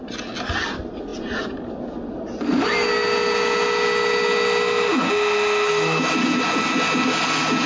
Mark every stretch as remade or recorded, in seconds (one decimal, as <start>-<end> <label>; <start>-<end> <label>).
0.0-7.7 recorded